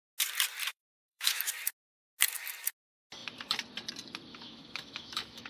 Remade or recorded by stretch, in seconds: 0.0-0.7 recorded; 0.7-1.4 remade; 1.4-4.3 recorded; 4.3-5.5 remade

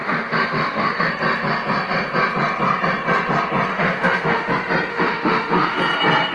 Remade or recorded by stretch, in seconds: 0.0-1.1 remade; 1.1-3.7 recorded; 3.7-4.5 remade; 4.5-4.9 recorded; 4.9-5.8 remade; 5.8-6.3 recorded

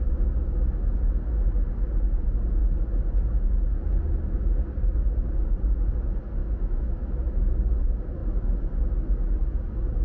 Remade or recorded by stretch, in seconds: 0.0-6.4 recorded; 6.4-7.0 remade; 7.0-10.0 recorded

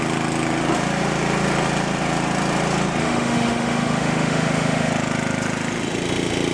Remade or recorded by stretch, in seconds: 0.0-3.0 recorded; 3.0-4.9 remade; 4.9-6.5 recorded

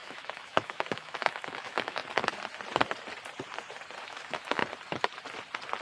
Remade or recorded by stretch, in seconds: 0.0-2.0 remade; 2.0-4.0 recorded; 4.0-4.6 remade; 4.6-5.8 recorded

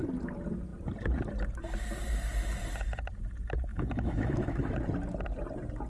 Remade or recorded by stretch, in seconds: 0.0-3.7 recorded; 3.7-4.7 remade; 4.7-5.9 recorded